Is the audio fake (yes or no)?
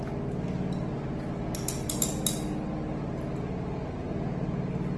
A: no